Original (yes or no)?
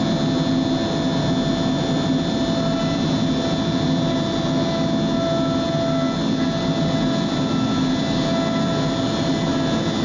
yes